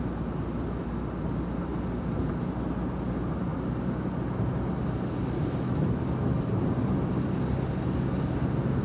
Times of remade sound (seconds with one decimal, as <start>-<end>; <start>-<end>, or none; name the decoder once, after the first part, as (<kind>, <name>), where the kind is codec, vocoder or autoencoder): none